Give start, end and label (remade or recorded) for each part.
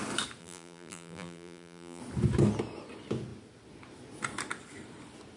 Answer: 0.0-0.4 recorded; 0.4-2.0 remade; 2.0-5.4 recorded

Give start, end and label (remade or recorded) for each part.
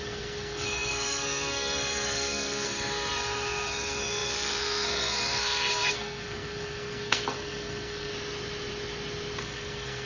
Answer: 0.0-8.1 remade; 8.1-9.4 recorded; 9.4-10.1 remade